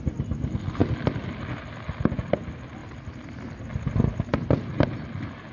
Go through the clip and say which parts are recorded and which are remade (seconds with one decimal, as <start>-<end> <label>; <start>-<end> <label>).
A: 0.0-2.8 recorded; 2.8-3.6 remade; 3.6-5.5 recorded